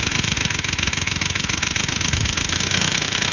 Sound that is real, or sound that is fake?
fake